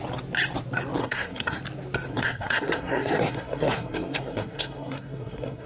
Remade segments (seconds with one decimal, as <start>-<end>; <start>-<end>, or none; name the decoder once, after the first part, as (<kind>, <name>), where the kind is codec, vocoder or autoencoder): 1.0-1.6 (codec, SNAC); 2.1-5.7